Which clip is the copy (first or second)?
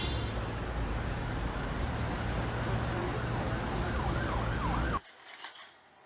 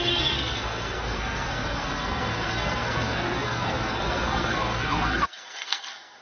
second